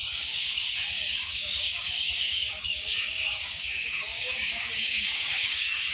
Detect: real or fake fake